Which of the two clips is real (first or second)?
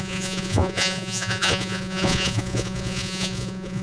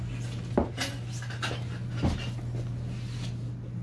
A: second